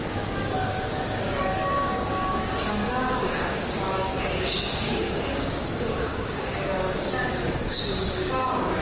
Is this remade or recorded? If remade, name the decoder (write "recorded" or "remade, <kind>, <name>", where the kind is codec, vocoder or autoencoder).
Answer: remade, codec, DAC